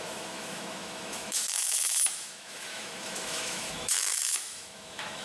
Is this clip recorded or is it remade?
remade